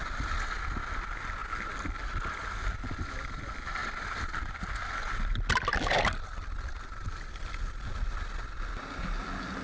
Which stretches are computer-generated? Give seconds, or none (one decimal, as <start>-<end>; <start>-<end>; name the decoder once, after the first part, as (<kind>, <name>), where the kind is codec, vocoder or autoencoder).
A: none

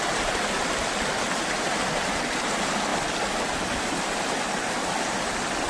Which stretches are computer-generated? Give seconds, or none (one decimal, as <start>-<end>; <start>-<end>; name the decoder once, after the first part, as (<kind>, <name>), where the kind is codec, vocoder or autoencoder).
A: none

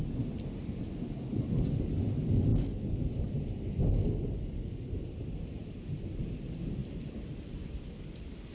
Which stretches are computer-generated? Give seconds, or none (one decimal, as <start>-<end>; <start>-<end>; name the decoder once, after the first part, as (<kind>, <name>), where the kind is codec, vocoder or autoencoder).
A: none

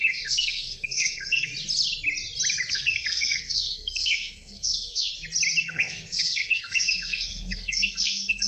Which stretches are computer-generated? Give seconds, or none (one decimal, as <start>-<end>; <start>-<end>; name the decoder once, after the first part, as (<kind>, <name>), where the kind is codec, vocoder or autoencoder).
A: 0.0-1.5 (codec, SNAC); 2.7-5.1; 5.6-8.5

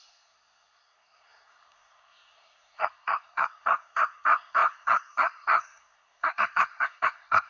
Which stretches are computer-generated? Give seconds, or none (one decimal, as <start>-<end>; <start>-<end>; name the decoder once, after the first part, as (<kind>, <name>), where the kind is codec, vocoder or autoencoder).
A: 0.0-7.5 (codec, SNAC)